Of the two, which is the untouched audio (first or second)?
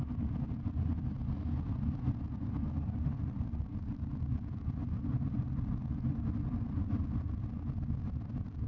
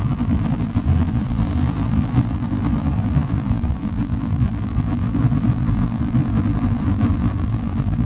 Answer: first